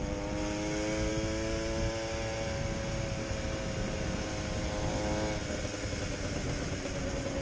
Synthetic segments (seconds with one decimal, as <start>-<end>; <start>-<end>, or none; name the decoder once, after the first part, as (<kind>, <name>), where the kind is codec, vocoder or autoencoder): none